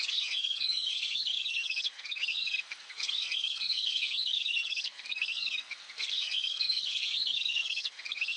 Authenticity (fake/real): fake